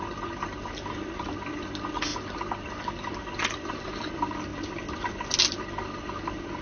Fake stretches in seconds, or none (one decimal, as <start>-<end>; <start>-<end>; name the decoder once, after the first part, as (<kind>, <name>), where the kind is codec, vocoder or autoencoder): none